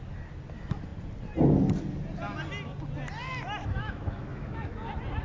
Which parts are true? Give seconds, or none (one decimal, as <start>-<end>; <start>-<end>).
0.0-3.6; 4.7-5.2